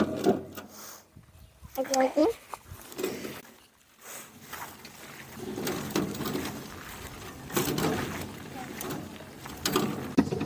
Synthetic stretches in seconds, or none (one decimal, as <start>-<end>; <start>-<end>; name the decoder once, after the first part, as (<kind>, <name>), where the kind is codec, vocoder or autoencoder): 8.4-9.1 (vocoder, BigVGAN v2)